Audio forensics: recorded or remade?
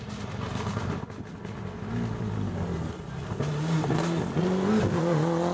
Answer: recorded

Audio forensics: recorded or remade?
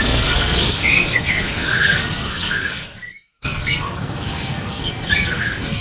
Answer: remade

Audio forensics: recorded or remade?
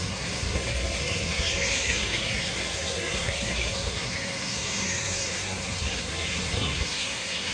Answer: remade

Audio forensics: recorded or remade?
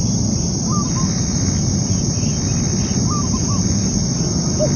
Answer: recorded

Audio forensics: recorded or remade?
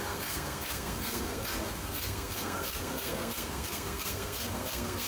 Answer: remade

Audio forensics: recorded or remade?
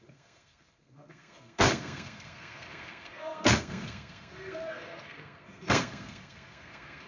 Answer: remade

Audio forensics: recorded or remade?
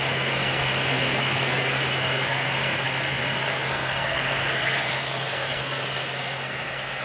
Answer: remade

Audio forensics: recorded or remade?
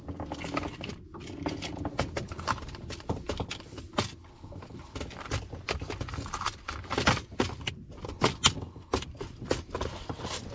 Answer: recorded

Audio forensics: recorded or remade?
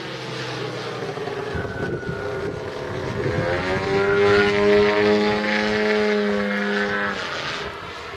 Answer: recorded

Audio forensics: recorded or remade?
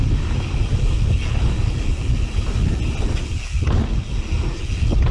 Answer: recorded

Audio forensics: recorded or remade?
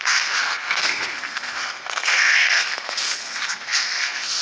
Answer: remade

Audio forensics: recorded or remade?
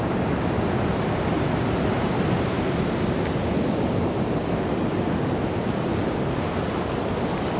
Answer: recorded